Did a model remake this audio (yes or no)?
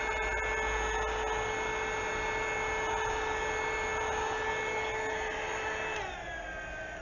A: no